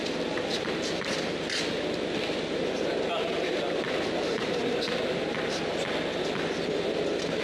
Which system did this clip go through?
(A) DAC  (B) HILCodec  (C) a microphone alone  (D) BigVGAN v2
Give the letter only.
C